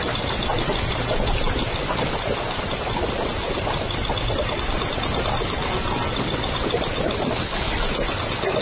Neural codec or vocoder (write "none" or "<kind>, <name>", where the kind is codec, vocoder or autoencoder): none